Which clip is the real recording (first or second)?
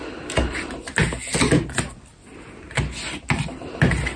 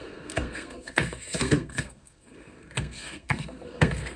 first